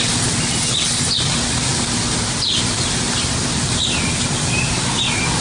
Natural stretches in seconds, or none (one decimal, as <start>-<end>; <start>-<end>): 0.0-5.4